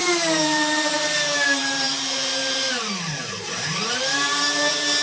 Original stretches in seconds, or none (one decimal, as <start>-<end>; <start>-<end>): none